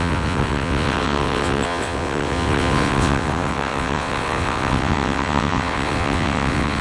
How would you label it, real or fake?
fake